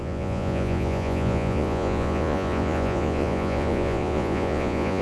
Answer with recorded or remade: remade